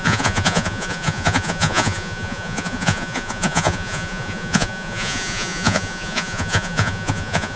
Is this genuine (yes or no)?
no